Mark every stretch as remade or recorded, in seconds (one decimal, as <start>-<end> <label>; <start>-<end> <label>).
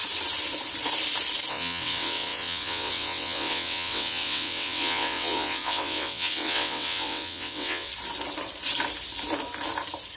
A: 0.0-1.5 recorded; 1.5-7.9 remade; 7.9-10.2 recorded